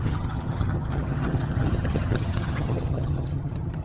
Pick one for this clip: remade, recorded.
remade